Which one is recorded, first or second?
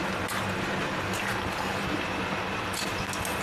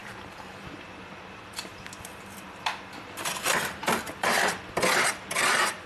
first